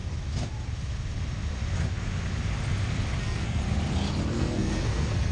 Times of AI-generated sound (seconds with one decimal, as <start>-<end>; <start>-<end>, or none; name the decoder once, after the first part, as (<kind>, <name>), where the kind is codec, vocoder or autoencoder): 3.2-3.6 (codec, SNAC); 4.3-5.3